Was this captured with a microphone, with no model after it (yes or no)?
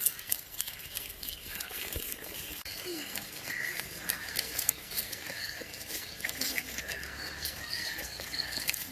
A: no